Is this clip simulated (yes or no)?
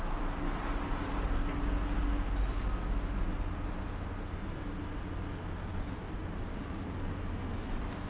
no